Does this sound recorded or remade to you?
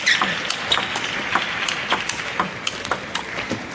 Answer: recorded